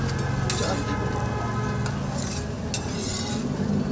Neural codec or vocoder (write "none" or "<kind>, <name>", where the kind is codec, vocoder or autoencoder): none